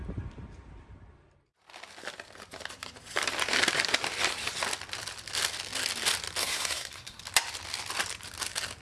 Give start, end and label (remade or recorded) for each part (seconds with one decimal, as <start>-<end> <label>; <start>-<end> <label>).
0.0-6.4 recorded; 6.4-7.2 remade; 7.2-8.8 recorded